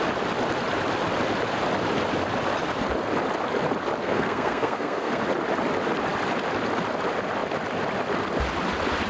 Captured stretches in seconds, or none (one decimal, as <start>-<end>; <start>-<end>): 0.0-4.0; 5.2-9.1